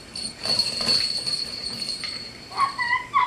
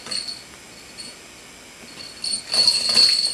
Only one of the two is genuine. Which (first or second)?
second